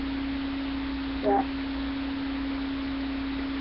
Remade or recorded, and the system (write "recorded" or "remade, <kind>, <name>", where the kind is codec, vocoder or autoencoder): recorded